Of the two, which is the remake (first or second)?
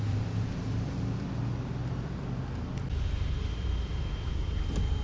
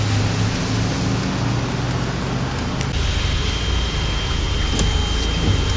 first